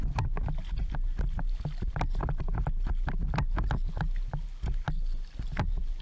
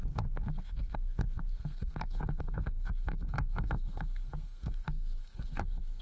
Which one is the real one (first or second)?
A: first